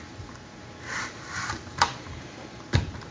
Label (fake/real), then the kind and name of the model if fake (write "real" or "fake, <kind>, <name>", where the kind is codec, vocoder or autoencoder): fake, vocoder, BigVGAN v2